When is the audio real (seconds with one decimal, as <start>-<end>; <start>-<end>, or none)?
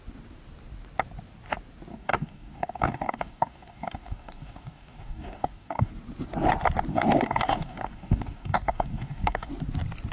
0.0-1.9; 5.9-6.9; 9.5-10.1